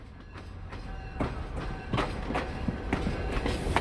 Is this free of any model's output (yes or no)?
yes